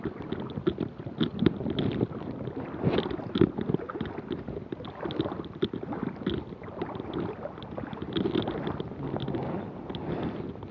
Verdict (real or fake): real